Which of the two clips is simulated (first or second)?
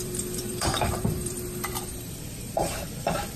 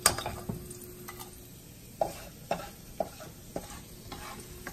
first